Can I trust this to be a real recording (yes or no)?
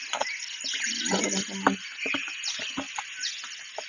yes